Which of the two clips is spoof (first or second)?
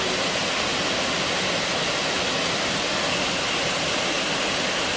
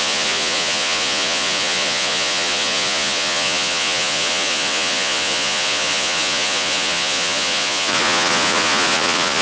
second